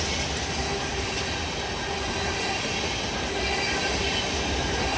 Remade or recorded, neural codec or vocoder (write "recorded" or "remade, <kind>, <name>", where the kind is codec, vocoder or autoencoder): recorded